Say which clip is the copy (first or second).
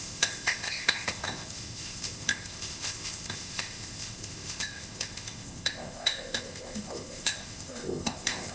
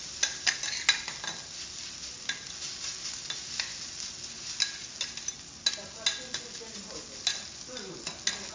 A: first